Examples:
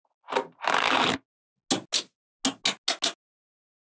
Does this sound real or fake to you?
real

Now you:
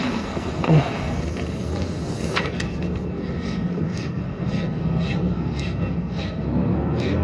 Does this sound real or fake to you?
fake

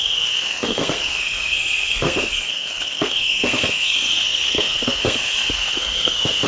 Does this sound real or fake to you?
fake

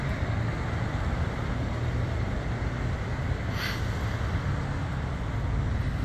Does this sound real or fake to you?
real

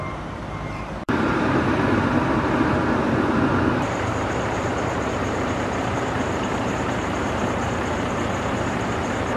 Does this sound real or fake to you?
fake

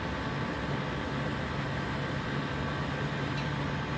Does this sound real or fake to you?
real